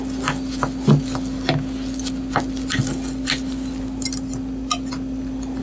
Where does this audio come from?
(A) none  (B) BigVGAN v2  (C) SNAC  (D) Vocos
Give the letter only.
A